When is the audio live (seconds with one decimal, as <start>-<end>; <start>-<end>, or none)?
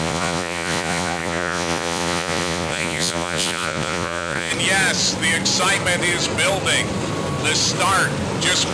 4.5-8.7